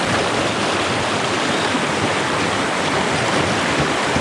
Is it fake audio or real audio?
real